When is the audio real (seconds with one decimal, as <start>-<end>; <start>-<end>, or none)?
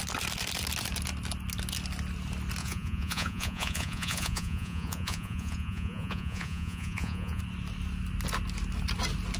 0.0-2.6; 7.4-9.4